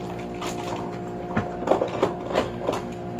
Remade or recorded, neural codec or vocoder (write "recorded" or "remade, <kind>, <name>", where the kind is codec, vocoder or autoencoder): recorded